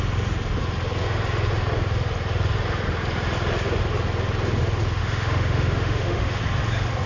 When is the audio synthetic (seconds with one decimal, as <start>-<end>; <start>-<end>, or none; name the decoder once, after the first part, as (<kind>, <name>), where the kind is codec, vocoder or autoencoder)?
5.0-6.4 (autoencoder, DAC-VAE)